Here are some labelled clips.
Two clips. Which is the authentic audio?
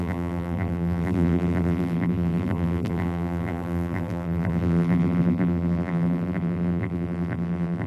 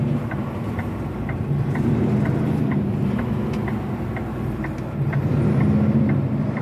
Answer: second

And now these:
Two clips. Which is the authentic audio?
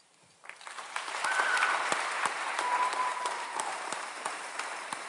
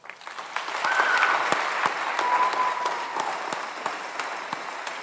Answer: second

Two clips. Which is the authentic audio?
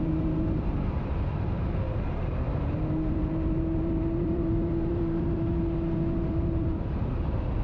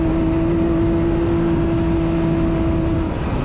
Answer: second